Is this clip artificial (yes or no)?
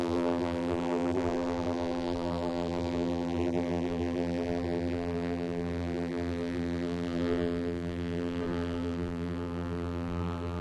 yes